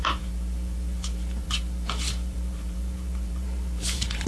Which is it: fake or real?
fake